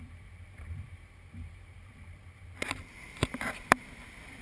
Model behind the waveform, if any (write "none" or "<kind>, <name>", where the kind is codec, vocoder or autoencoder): vocoder, BigVGAN v2